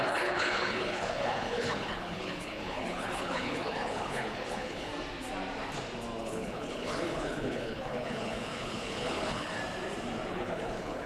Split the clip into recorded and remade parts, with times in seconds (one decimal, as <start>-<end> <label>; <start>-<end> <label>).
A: 0.0-4.9 remade; 4.9-6.2 recorded; 6.2-9.6 remade; 9.6-10.3 recorded; 10.3-11.1 remade